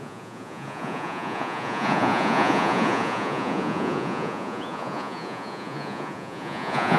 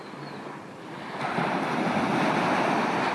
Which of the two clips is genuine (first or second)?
second